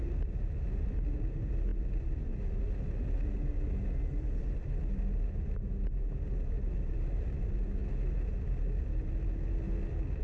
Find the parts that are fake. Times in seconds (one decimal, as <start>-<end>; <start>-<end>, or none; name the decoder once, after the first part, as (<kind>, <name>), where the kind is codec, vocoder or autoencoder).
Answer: none